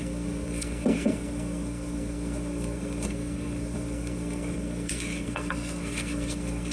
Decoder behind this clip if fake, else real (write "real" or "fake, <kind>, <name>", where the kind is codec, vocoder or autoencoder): fake, codec, SNAC